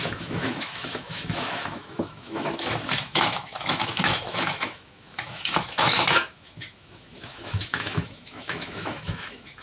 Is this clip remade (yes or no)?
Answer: yes